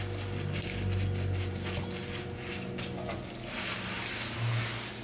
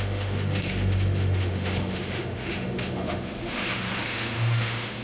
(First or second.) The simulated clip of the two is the second